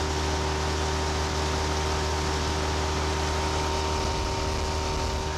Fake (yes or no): no